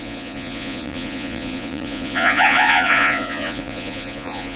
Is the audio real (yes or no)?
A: no